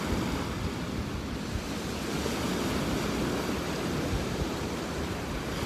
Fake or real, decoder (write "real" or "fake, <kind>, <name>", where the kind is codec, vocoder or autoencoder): real